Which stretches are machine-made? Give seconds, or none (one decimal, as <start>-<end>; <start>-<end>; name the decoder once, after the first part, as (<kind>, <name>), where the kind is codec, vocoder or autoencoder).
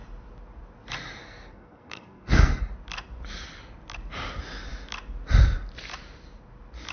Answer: 1.2-2.6 (codec, SNAC)